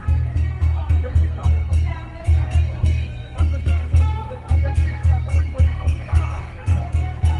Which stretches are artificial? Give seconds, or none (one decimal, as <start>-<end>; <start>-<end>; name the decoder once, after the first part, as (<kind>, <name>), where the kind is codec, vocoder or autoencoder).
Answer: 0.0-7.4 (codec, SNAC)